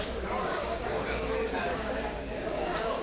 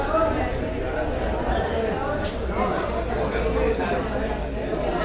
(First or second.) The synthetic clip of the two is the first